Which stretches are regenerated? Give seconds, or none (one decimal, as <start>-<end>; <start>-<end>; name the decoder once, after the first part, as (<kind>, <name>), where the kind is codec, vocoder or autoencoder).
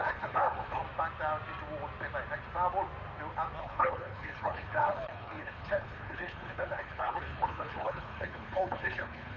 0.0-0.8 (codec, HILCodec); 3.6-9.4